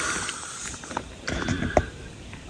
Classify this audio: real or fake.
fake